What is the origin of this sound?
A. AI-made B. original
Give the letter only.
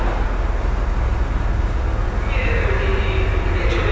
B